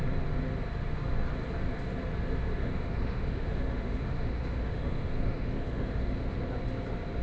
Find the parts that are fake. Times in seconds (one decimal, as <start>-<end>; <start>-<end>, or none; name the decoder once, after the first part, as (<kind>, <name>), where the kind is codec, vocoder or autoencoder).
2.6-6.5 (autoencoder, DAC-VAE)